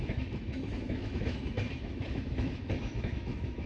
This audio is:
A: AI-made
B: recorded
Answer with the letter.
A